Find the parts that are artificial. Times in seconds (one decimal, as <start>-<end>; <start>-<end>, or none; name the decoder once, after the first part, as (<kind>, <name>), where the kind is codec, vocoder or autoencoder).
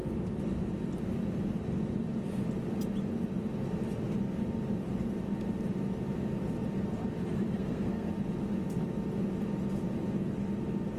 7.6-8.1 (codec, SNAC)